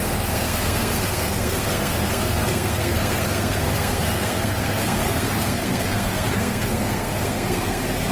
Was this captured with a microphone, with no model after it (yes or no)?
no